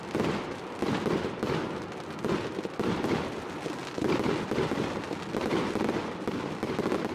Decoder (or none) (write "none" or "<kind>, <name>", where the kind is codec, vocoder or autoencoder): none